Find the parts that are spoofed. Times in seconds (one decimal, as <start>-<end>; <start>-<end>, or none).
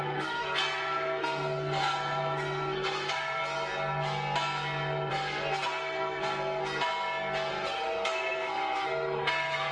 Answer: 0.0-3.4; 5.1-6.6; 7.5-9.7